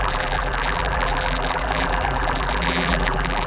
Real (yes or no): no